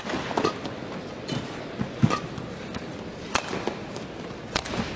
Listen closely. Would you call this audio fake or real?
real